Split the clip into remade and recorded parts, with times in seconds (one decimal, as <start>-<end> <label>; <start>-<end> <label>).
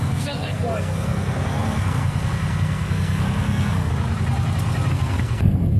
0.0-3.9 remade; 3.9-4.9 recorded; 4.9-5.8 remade